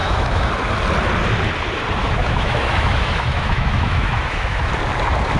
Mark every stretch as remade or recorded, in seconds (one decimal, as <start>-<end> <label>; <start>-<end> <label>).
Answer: 0.0-0.5 remade; 0.5-2.0 recorded; 2.0-4.6 remade; 4.6-5.4 recorded